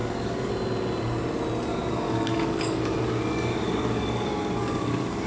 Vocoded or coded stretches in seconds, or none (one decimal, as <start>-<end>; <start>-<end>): 0.0-0.5; 1.7-5.3